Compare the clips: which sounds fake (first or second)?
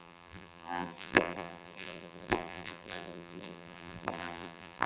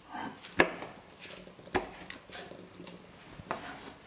first